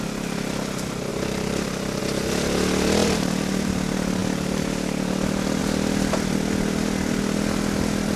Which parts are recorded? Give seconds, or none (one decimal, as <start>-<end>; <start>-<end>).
0.0-1.1; 2.0-3.0; 3.7-8.2